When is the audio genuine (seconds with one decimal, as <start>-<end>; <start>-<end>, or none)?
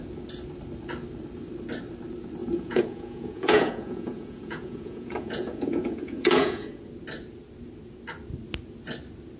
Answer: 0.0-2.4; 6.8-9.4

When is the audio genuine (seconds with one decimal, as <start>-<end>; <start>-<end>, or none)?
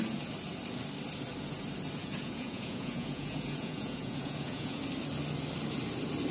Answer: 0.0-2.0; 4.8-6.3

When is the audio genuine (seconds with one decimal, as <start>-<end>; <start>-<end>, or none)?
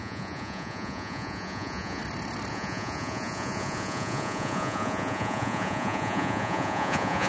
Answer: 2.0-2.5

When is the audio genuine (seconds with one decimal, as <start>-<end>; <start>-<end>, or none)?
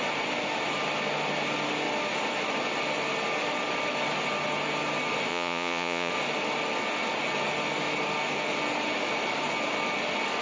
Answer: 0.0-5.3; 6.1-10.4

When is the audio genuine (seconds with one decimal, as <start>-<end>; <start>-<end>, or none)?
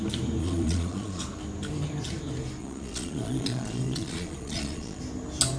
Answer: 0.0-0.4; 1.2-2.6; 5.0-5.6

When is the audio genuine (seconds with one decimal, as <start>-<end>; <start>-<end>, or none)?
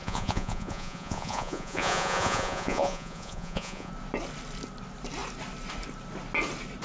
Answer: 3.9-6.8